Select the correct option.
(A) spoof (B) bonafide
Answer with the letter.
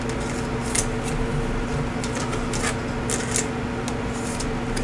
B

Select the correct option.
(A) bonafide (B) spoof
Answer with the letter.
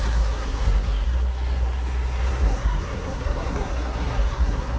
B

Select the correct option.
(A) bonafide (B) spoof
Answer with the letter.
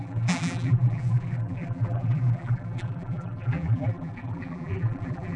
B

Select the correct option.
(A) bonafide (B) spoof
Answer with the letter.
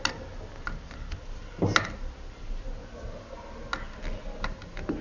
A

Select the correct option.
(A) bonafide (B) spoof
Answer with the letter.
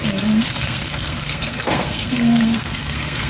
B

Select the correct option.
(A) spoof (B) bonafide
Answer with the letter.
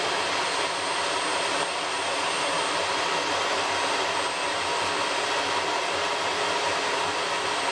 B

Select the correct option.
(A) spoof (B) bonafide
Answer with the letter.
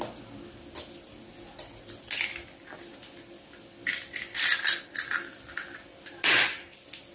B